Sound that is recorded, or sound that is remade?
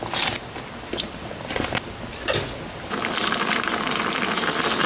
recorded